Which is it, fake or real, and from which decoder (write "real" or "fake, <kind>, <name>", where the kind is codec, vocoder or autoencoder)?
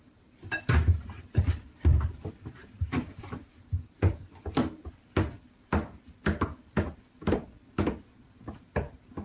fake, vocoder, BigVGAN v2